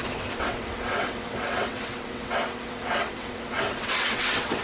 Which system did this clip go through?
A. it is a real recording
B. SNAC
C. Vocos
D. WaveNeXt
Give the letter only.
D